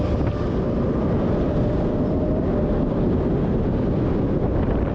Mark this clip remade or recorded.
recorded